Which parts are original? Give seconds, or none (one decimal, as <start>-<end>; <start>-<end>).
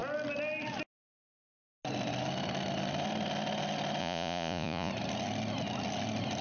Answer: 0.0-4.0; 4.9-6.4